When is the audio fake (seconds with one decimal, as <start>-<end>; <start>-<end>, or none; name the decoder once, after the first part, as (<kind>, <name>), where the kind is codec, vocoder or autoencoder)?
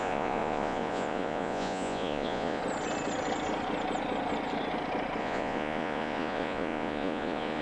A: 0.0-2.6 (vocoder, Vocos); 5.2-7.6